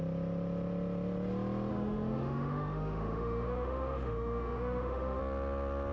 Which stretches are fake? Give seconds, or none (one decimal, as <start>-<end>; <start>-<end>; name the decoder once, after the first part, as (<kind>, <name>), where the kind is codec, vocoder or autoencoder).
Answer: 1.7-5.2 (autoencoder, DAC-VAE)